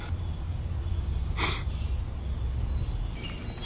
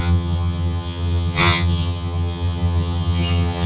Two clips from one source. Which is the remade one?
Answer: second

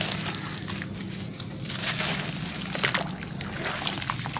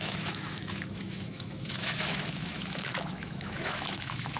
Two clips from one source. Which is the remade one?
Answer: second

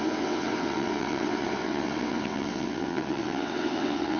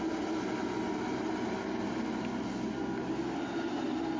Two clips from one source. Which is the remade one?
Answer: first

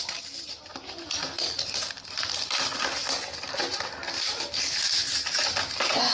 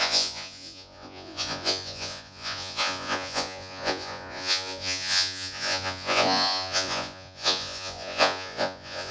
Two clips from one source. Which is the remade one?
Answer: second